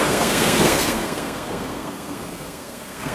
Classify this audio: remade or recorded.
remade